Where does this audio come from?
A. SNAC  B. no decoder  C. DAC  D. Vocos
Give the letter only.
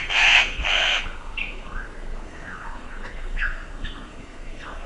A